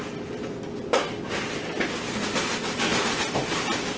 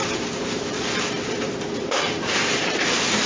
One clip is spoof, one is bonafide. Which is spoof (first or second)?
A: second